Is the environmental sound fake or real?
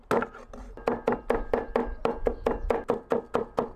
real